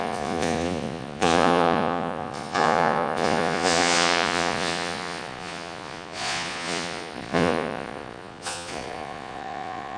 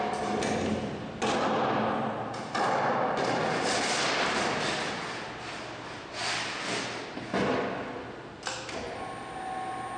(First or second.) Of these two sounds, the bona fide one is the second